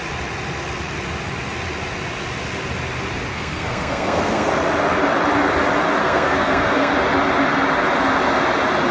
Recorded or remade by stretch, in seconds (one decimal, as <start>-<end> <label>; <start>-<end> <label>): 0.0-3.3 recorded; 3.3-4.5 remade; 4.5-6.0 recorded; 6.0-6.9 remade; 6.9-8.9 recorded